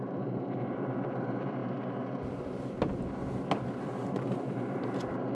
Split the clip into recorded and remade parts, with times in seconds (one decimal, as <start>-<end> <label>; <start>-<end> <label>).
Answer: 0.0-1.6 remade; 1.6-3.7 recorded; 3.7-5.3 remade